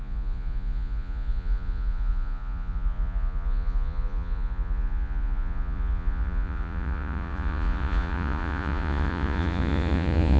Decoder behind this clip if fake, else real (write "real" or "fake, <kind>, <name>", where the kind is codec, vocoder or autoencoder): fake, vocoder, Vocos